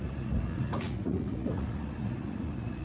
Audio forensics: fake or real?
fake